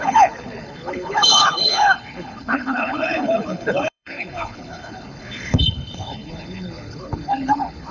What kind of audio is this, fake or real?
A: fake